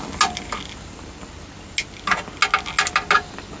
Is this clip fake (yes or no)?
no